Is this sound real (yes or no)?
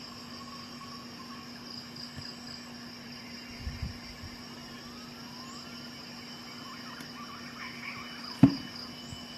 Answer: yes